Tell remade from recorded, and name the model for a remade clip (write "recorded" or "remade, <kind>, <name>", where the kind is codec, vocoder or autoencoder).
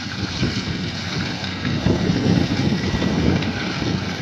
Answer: remade, codec, SNAC